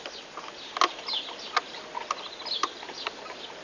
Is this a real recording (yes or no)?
yes